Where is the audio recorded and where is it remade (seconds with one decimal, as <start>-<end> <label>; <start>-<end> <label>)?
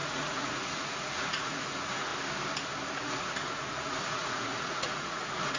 0.0-2.1 remade; 2.1-3.0 recorded; 3.0-5.6 remade